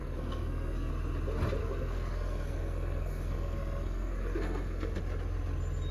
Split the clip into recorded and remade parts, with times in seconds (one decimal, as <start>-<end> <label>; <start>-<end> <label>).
0.0-0.9 remade; 0.9-1.6 recorded; 1.6-5.0 remade; 5.0-5.9 recorded